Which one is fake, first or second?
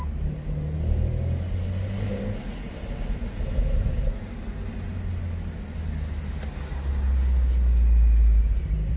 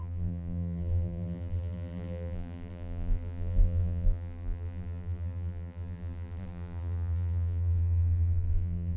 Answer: second